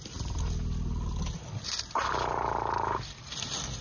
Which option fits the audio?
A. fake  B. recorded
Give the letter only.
B